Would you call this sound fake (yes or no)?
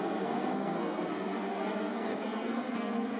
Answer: yes